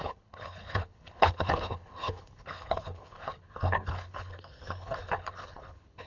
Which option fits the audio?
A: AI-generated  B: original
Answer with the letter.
A